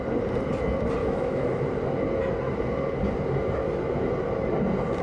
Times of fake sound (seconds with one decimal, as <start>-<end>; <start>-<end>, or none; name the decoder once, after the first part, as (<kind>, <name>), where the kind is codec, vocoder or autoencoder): 1.0-1.6 (autoencoder, DAC-VAE)

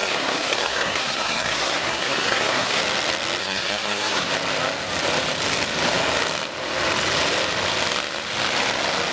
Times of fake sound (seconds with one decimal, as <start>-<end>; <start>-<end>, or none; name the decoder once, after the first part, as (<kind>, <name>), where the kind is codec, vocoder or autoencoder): 0.0-2.8 (codec, SNAC); 3.4-4.3

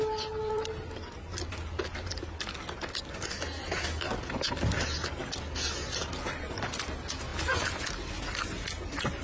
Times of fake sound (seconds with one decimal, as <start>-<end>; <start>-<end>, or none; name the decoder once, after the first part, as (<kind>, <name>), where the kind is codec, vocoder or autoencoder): none